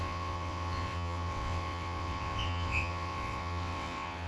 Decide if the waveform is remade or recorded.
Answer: remade